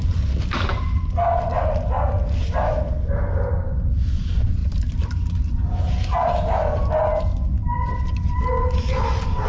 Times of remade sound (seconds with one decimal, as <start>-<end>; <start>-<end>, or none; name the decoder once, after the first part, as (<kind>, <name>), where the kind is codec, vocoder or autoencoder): none